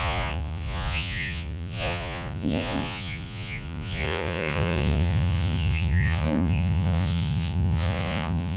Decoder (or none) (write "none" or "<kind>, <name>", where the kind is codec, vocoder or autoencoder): vocoder, Vocos